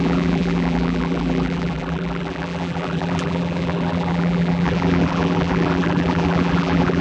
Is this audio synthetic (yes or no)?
yes